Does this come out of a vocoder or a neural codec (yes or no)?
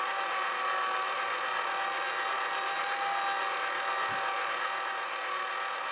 no